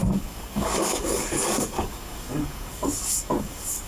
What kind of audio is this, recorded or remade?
remade